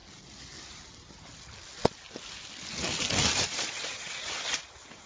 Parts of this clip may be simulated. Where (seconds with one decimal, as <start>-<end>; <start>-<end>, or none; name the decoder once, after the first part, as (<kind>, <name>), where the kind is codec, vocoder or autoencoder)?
3.1-5.1 (vocoder, BigVGAN v2)